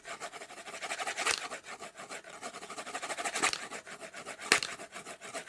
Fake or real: real